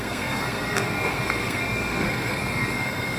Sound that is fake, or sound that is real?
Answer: fake